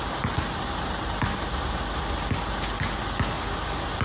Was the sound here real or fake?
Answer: real